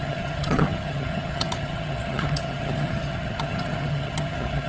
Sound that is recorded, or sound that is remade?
remade